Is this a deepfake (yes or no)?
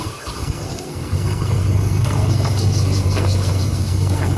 yes